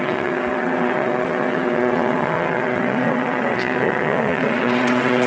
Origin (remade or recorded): remade